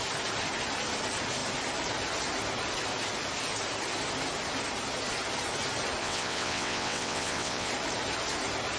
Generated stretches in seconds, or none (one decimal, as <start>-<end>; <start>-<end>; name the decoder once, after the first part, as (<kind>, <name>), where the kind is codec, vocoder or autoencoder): 6.0-7.7 (vocoder, WaveNeXt)